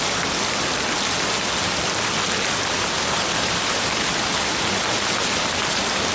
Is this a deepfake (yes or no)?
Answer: no